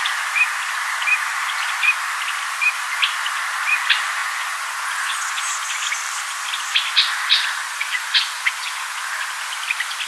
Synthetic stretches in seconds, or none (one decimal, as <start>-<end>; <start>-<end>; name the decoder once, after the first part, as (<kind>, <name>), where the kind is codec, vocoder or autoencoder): 4.2-5.7 (vocoder, Vocos); 7.6-9.1